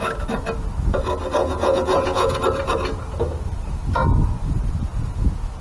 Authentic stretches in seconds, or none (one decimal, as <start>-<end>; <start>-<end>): 0.0-1.4; 2.4-5.6